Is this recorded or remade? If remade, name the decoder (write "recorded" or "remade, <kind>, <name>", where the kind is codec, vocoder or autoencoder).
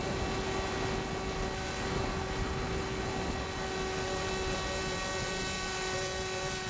recorded